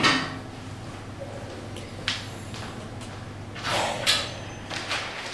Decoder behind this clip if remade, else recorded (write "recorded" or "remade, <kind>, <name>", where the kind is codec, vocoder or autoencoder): recorded